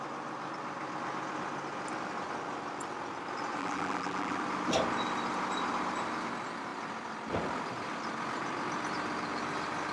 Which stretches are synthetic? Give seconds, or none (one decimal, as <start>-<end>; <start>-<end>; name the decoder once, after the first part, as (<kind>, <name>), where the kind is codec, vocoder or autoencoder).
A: 3.6-4.4 (vocoder, BigVGAN v2)